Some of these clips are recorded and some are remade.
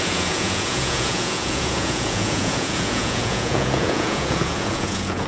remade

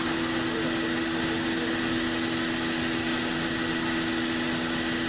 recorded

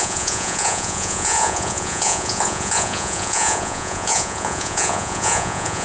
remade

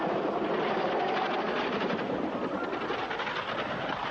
recorded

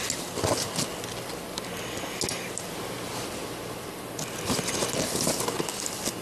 recorded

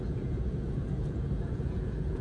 remade